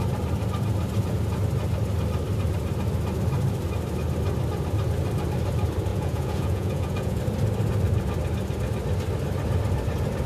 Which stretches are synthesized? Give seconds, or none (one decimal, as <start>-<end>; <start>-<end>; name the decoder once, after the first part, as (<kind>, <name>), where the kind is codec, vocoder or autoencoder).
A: 5.9-7.2 (vocoder, Vocos)